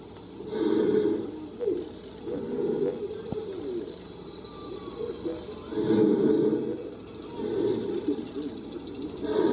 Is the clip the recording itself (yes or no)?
yes